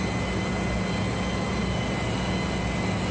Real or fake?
real